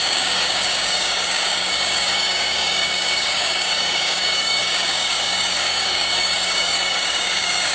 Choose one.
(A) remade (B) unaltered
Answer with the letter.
A